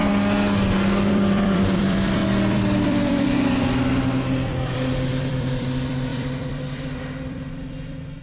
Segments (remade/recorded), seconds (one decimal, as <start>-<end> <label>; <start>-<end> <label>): 0.0-1.1 recorded; 1.1-8.2 remade